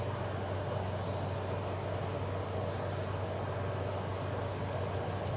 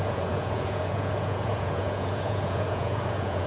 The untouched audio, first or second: first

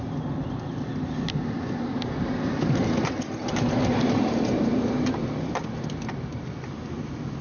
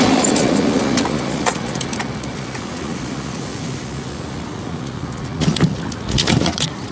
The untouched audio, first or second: first